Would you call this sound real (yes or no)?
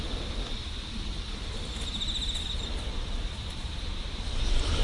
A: yes